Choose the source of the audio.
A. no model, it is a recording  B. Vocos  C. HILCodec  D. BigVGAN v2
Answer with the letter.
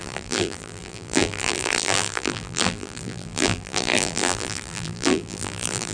D